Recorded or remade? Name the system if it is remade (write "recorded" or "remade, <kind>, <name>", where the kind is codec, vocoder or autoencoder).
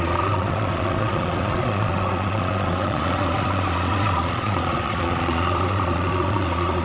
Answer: remade, vocoder, Vocos